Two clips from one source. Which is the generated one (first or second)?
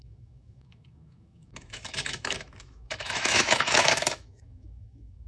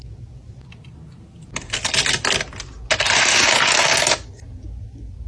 first